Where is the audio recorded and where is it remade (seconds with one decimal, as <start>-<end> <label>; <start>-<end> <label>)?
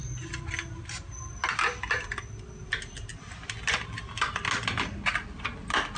0.0-0.5 remade; 0.5-6.0 recorded